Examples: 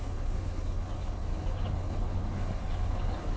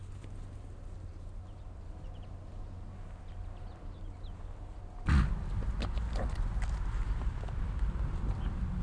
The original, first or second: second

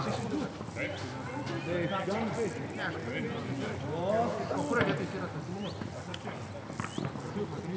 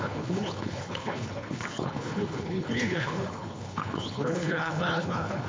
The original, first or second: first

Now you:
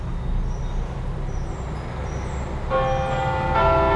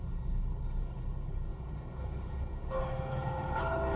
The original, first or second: first